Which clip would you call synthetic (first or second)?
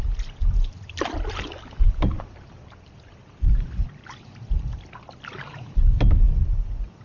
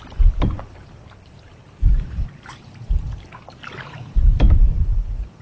second